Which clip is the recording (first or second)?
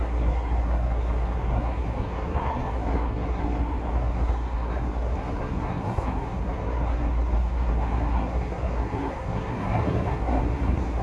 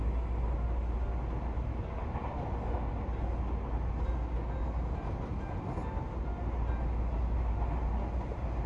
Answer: second